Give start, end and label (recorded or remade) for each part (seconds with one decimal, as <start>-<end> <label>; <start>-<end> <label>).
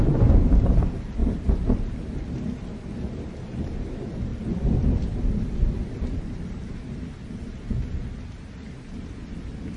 0.0-1.2 recorded; 1.2-1.8 remade; 1.8-4.3 recorded; 4.3-6.7 remade; 6.7-9.8 recorded